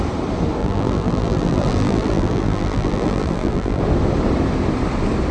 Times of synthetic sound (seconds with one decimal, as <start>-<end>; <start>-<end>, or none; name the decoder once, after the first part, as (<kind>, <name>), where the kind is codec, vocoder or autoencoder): 0.6-3.8 (vocoder, BigVGAN v2)